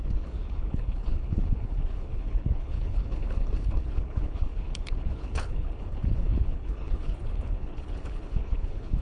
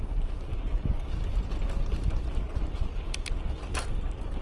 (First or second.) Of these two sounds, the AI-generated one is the first